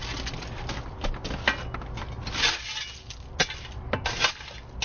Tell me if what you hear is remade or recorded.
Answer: recorded